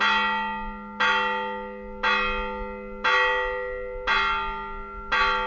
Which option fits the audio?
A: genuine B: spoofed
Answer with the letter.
A